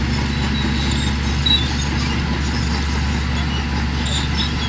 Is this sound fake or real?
real